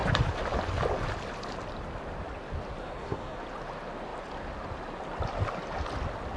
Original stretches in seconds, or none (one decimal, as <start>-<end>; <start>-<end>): 0.0-2.8; 3.4-6.4